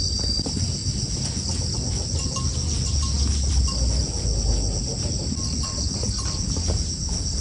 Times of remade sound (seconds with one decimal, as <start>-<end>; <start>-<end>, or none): none